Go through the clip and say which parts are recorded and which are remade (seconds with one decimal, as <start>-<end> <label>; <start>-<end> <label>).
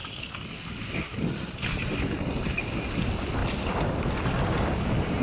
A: 0.0-5.2 recorded